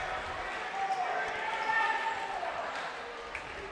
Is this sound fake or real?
real